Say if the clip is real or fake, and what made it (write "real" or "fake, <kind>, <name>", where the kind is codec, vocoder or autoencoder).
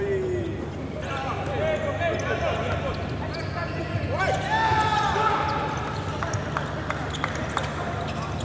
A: real